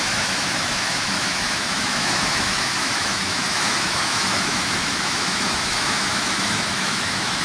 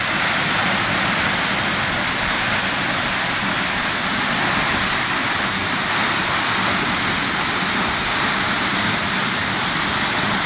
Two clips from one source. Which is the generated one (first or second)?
first